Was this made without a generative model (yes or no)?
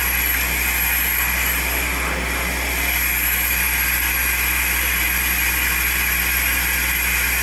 yes